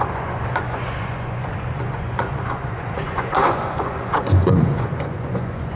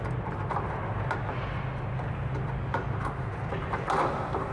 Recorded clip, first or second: second